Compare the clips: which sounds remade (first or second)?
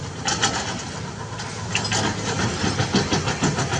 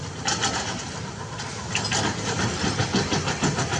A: second